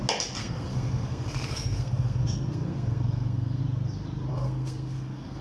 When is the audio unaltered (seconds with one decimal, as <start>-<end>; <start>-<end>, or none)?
0.0-0.4; 3.6-4.3